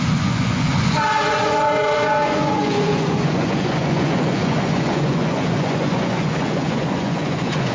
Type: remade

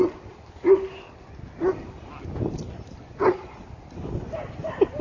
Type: recorded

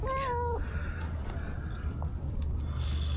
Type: recorded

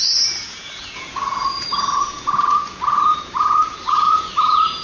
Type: remade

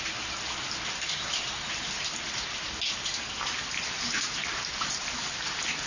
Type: recorded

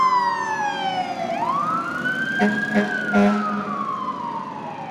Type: recorded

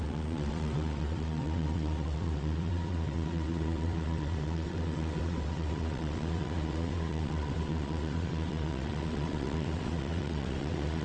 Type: remade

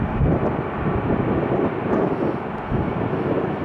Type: recorded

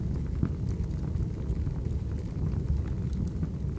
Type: recorded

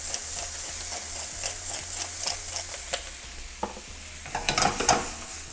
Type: recorded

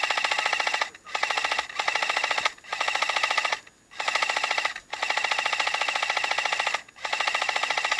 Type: recorded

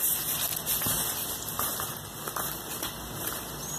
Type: recorded